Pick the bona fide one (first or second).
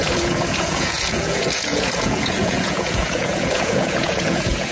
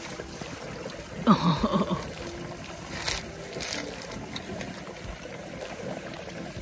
second